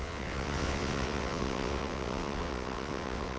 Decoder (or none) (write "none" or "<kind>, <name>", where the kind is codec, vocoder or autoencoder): vocoder, WaveNeXt